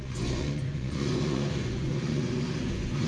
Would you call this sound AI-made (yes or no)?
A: yes